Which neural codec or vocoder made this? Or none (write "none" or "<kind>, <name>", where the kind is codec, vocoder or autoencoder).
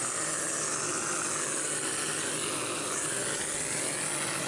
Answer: none